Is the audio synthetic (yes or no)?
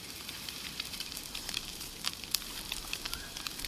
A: yes